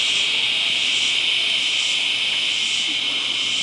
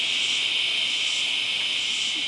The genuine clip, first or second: second